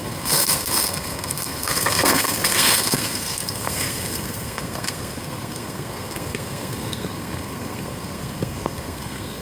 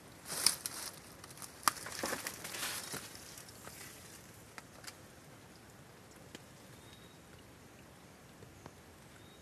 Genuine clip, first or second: second